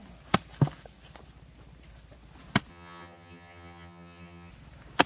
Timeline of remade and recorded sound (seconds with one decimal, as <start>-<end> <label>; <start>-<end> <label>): 0.0-2.7 recorded; 2.7-4.5 remade; 4.5-5.1 recorded